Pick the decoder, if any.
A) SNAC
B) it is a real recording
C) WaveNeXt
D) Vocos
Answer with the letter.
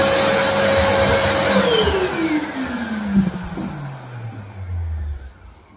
B